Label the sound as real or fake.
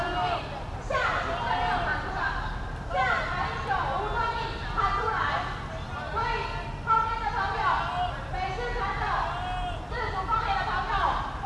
real